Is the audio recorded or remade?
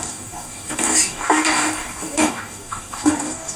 remade